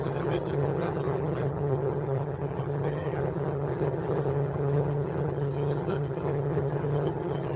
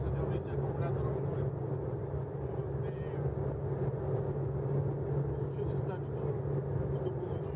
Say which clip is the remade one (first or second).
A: first